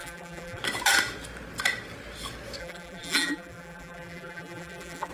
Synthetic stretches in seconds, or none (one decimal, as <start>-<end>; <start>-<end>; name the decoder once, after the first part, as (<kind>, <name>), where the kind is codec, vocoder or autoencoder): 0.0-0.6 (vocoder, BigVGAN v2); 2.6-5.1